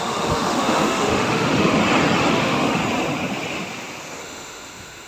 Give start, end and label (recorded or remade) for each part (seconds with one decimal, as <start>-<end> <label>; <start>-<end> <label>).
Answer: 0.0-1.8 remade; 1.8-2.3 recorded; 2.3-2.8 remade; 2.8-4.2 recorded; 4.2-5.1 remade